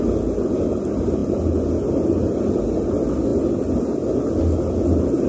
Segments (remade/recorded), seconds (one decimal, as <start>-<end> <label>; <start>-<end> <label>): 0.0-5.3 recorded